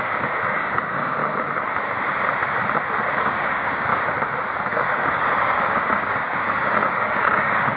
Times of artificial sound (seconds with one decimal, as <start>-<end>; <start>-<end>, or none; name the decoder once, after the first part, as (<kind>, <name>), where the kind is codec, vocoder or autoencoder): 0.0-1.2 (codec, DAC); 3.2-3.9; 4.6-7.8